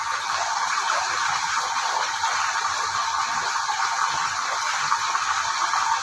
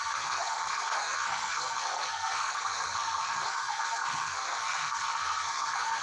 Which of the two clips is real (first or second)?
first